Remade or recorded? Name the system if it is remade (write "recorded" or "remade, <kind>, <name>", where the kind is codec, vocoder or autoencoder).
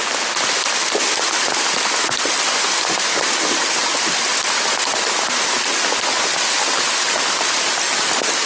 recorded